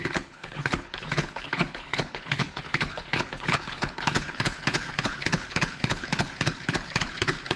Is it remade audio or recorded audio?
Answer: remade